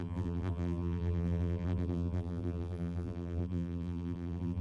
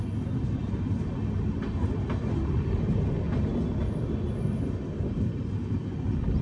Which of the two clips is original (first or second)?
second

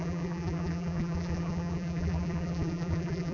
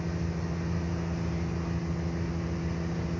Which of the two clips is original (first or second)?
second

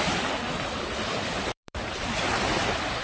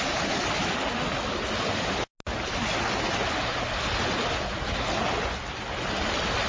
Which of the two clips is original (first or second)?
second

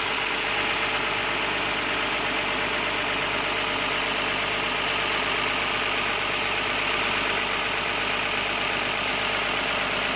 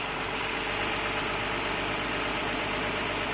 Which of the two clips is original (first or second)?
first